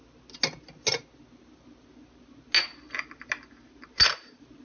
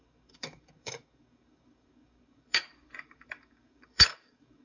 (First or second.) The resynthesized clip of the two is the second